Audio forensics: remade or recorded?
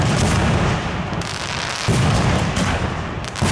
recorded